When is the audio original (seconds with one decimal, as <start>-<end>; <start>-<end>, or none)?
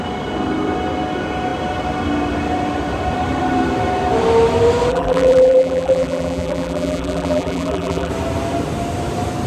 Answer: 0.0-4.9; 8.1-9.5